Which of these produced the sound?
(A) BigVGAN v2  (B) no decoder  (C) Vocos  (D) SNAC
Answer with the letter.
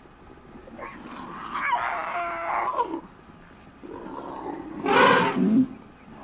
B